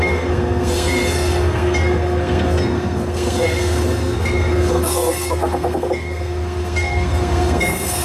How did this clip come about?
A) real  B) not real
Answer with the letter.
B